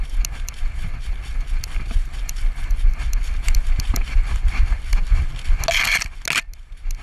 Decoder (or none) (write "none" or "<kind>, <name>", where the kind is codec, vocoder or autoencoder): none